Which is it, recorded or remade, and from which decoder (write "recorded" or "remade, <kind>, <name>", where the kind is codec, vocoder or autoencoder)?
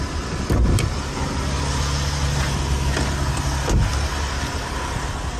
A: recorded